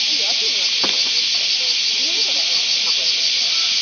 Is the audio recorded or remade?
recorded